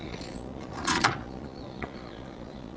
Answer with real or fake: fake